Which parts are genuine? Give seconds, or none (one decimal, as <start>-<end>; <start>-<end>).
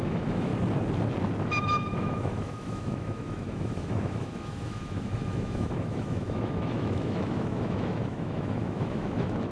0.5-1.4